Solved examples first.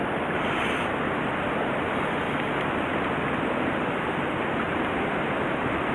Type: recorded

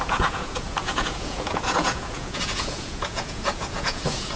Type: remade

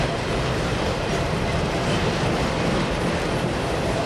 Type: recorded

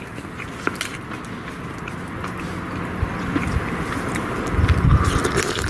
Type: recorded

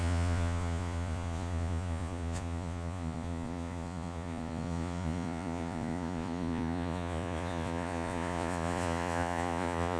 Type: remade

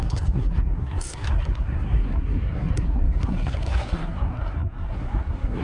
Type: remade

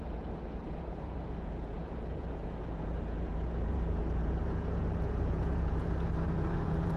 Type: remade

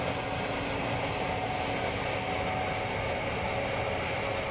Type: recorded